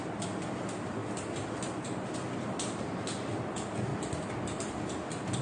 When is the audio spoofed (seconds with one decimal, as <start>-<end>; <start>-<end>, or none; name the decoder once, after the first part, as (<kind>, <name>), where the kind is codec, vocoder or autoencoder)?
0.0-3.9 (vocoder, BigVGAN v2)